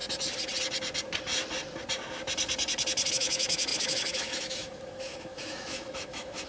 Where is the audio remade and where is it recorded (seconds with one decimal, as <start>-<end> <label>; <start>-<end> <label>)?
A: 0.0-3.1 recorded; 3.1-6.5 remade